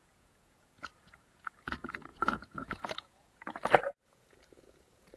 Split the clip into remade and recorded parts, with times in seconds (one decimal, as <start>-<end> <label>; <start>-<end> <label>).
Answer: 0.0-5.2 remade